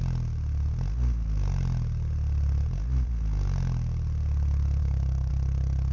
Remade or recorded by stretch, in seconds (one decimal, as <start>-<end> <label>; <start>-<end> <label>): 0.0-4.8 recorded; 4.8-5.3 remade; 5.3-5.9 recorded